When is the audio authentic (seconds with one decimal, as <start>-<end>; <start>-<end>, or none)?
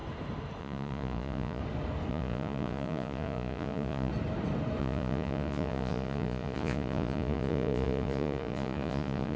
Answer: 0.0-0.6; 1.6-2.1; 4.1-4.8